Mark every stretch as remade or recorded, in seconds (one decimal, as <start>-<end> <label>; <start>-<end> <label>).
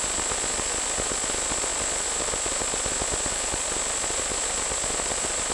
0.0-5.5 recorded